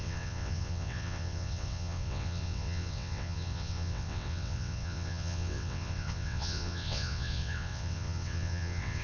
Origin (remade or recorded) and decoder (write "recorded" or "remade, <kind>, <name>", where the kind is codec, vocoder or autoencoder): remade, vocoder, WaveNeXt